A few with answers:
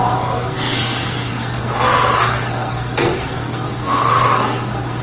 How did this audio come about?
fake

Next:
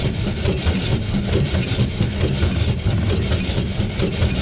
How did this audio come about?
real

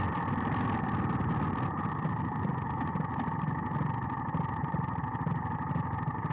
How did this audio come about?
real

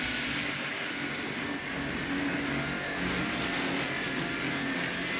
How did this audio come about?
real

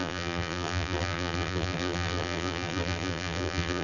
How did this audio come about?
fake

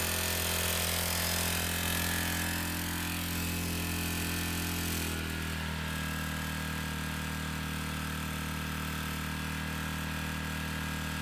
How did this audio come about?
real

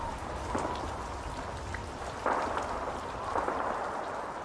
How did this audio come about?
real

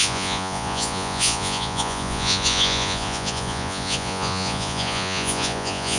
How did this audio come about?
fake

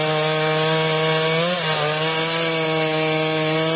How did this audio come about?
real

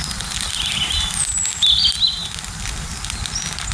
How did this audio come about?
real